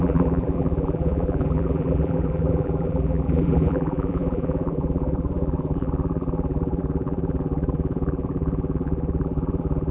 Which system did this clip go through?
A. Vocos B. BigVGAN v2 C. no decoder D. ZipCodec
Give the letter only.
B